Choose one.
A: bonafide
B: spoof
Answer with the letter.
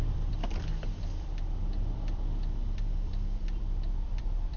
B